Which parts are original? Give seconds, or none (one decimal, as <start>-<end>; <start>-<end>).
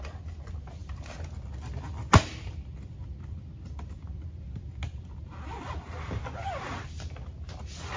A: 0.0-8.0